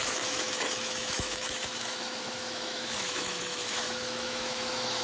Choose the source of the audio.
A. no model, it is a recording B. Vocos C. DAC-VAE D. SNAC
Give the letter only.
C